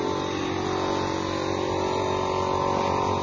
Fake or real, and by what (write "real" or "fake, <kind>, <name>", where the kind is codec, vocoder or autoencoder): real